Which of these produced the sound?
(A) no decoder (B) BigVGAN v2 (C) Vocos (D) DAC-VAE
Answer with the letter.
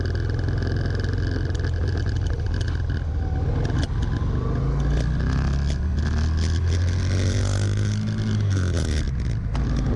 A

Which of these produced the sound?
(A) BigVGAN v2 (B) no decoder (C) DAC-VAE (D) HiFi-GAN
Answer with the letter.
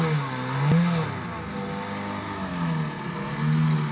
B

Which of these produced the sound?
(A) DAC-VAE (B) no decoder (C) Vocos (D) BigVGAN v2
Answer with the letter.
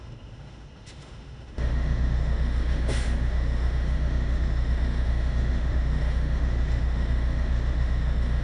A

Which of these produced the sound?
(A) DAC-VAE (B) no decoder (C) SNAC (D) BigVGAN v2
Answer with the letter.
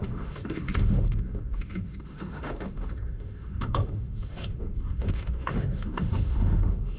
A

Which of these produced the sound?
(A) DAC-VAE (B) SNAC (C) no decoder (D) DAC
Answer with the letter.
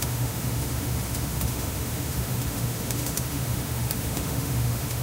A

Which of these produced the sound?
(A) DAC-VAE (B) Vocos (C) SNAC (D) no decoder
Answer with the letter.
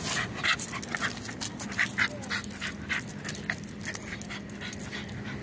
D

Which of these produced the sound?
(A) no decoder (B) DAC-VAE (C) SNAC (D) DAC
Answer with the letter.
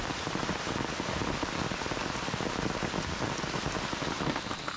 A